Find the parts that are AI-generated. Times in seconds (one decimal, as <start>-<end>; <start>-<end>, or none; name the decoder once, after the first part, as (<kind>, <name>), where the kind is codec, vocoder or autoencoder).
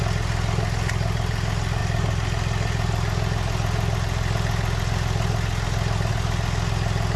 none